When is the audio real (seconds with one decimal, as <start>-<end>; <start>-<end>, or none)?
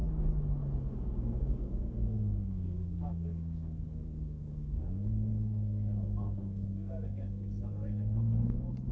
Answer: 0.0-0.9